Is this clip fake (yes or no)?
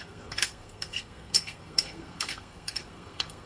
yes